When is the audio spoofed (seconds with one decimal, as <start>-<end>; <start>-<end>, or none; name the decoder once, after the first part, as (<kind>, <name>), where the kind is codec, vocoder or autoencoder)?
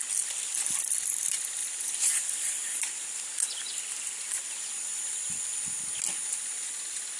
1.6-2.1 (vocoder, BigVGAN v2)